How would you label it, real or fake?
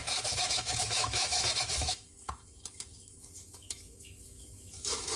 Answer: fake